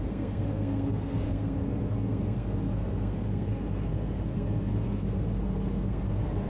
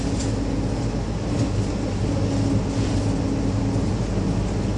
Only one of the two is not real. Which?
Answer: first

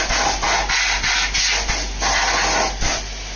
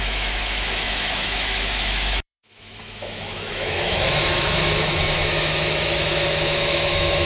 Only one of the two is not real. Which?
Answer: second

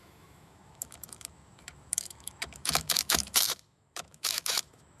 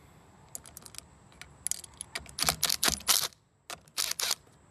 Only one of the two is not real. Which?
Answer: first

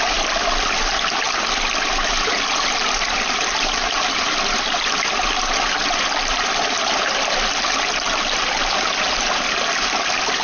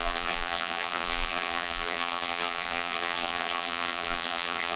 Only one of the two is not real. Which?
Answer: second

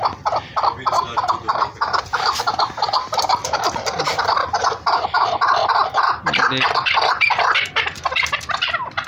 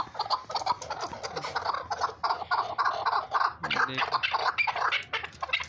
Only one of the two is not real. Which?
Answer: first